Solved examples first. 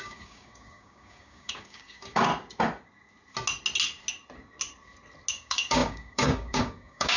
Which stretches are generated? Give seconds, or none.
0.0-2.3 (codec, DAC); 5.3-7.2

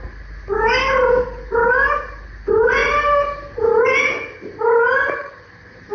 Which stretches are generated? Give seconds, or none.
none

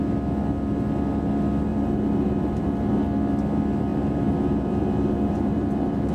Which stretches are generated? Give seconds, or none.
1.7-2.9 (vocoder, BigVGAN v2); 3.9-6.1

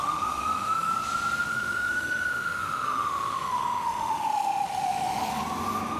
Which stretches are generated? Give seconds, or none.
0.0-0.9 (autoencoder, DAC-VAE); 1.5-5.3